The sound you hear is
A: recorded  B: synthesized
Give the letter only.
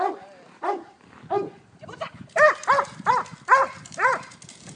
A